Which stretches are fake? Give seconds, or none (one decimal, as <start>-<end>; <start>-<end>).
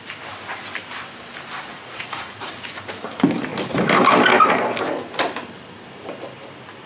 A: 1.7-2.5